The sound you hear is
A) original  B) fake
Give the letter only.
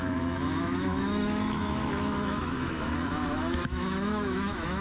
B